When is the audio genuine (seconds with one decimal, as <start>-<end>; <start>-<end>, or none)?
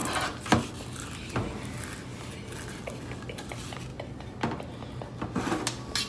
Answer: 0.0-6.1